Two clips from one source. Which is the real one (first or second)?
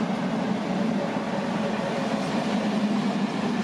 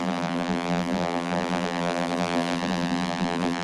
first